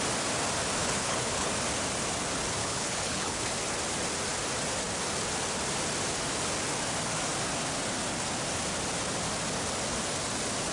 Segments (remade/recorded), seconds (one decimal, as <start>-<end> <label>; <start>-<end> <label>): 0.0-0.8 recorded; 0.8-1.5 remade; 1.5-2.6 recorded; 2.6-3.5 remade; 3.5-10.7 recorded